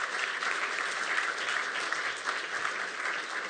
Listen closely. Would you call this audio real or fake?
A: real